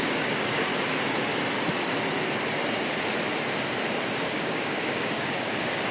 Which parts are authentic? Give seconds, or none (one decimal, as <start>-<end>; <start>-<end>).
0.7-4.2